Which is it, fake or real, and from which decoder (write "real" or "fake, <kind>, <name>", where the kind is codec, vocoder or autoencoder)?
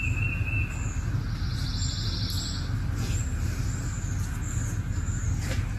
real